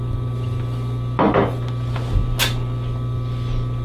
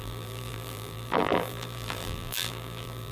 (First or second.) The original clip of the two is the first